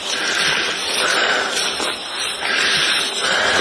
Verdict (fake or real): real